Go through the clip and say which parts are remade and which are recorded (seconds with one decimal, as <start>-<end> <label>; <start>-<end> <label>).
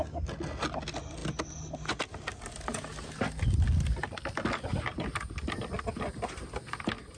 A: 0.0-7.2 recorded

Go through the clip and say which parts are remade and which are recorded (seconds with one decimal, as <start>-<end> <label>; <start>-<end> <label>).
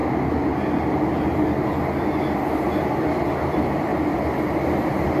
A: 0.0-3.1 recorded; 3.1-3.9 remade; 3.9-4.5 recorded; 4.5-5.2 remade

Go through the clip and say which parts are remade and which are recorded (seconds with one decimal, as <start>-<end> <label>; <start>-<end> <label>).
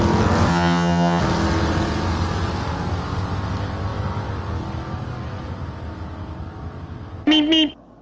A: 0.0-0.5 recorded; 0.5-1.2 remade; 1.2-8.0 recorded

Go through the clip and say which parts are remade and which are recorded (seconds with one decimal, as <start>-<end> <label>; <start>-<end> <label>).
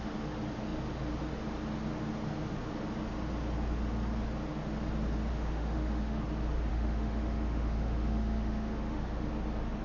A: 0.0-5.3 recorded; 5.3-6.2 remade; 6.2-6.7 recorded; 6.7-9.3 remade; 9.3-9.8 recorded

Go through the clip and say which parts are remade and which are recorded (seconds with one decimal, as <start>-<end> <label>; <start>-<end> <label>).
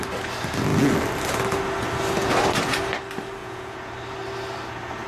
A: 0.0-3.4 recorded; 3.4-3.9 remade; 3.9-5.1 recorded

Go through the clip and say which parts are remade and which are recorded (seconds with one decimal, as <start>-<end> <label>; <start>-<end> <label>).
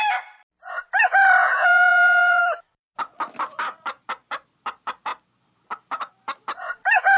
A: 0.0-1.4 recorded; 1.4-2.4 remade; 2.4-7.2 recorded